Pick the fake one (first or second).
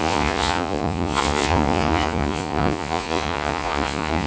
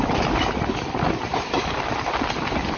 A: first